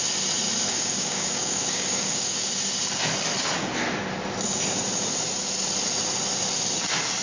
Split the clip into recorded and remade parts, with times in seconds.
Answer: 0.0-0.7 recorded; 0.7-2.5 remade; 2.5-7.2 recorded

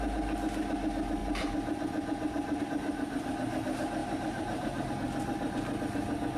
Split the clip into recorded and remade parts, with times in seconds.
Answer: 0.0-1.2 recorded; 1.2-2.6 remade; 2.6-4.0 recorded; 4.0-4.9 remade; 4.9-6.4 recorded